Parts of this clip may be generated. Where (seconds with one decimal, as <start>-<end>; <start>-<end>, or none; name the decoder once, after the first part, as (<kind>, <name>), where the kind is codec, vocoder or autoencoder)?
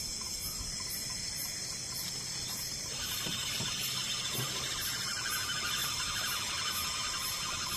2.4-3.6 (vocoder, BigVGAN v2); 5.8-6.5